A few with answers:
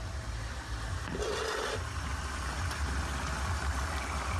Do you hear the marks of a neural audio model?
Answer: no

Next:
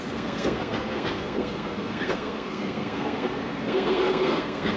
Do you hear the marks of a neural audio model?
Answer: yes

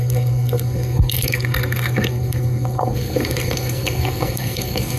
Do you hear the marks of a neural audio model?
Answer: yes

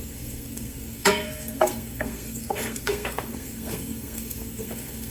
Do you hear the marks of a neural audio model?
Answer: yes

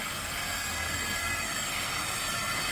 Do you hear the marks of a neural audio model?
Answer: yes